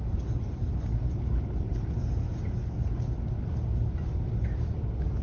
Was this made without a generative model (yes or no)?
yes